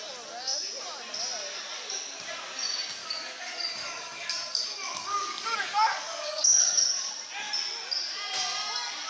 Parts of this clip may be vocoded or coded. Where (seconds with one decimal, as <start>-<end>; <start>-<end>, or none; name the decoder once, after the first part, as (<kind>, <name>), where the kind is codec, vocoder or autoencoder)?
3.0-7.1 (codec, DAC)